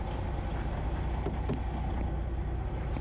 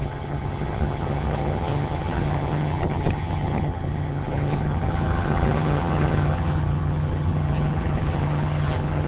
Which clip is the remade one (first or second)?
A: second